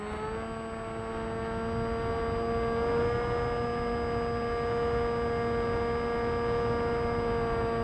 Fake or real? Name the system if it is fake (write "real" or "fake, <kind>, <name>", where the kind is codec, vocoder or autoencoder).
real